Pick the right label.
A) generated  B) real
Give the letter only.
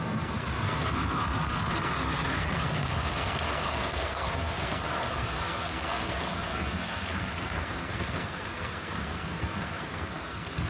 A